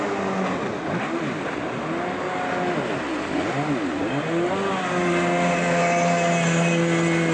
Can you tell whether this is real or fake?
real